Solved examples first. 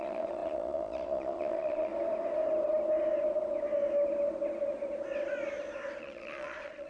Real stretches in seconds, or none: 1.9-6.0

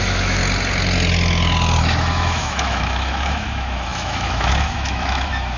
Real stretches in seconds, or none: 0.4-1.8

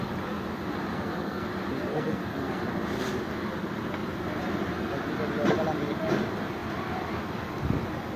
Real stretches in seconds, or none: 0.0-0.9; 1.5-1.9; 2.6-8.2

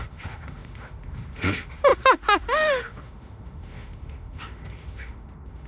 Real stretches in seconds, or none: none